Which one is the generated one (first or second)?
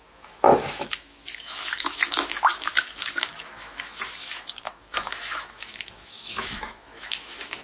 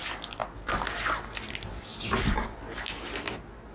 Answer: first